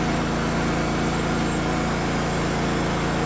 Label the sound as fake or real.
real